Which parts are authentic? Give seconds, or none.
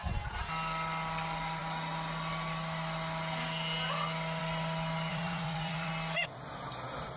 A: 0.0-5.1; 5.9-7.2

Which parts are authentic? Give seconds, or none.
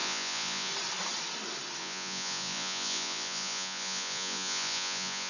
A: 0.7-1.8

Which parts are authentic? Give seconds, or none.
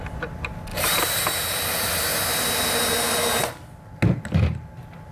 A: 0.0-0.7; 1.2-5.1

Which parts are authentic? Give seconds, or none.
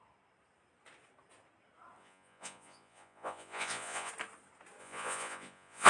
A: 0.0-2.0; 4.1-4.8